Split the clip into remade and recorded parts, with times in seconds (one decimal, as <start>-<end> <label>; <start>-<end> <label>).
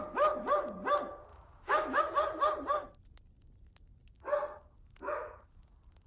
0.0-1.3 recorded; 1.3-2.0 remade; 2.0-6.1 recorded